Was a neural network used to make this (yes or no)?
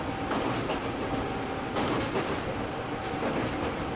no